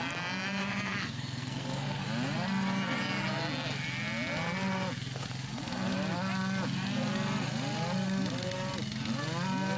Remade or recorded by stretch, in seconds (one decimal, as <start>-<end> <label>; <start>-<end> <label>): 0.0-0.6 recorded; 0.6-2.0 remade; 2.0-9.8 recorded